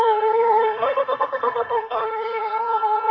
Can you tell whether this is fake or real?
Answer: fake